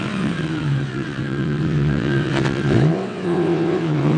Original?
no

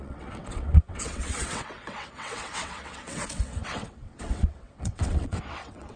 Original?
no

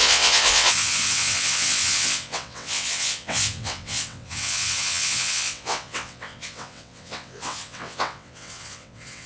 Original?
no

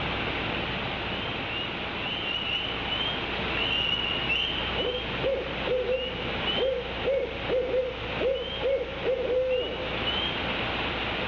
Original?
yes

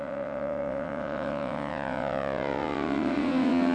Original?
no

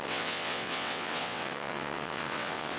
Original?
no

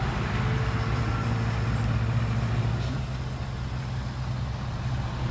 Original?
yes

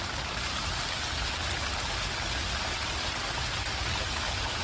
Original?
yes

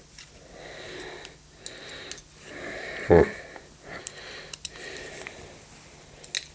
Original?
yes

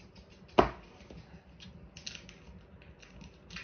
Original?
yes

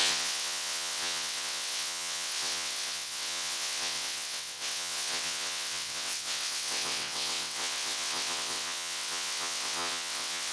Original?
no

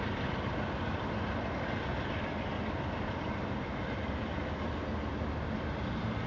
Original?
yes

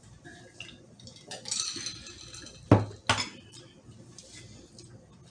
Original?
yes